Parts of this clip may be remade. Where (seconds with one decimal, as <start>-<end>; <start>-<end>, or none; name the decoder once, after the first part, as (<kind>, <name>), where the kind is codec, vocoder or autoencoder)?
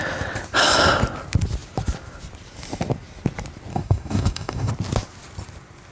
3.7-4.7 (codec, DAC)